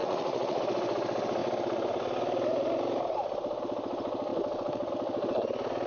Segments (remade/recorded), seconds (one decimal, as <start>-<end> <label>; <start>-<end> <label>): 0.0-0.6 remade; 0.6-5.9 recorded